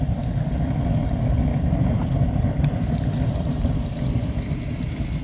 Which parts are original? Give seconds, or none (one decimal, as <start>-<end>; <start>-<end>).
0.0-1.5; 4.6-5.2